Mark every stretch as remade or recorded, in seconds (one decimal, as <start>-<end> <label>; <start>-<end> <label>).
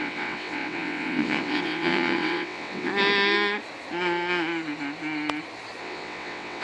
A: 0.0-2.9 remade; 2.9-5.8 recorded; 5.8-6.6 remade